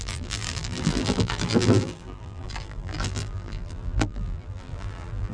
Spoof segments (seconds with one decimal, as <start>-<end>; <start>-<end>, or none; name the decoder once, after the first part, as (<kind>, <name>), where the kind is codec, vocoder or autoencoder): 0.0-5.3 (vocoder, BigVGAN v2)